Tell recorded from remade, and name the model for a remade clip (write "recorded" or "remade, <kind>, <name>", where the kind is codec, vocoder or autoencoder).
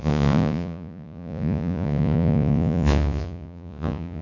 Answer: remade, vocoder, Vocos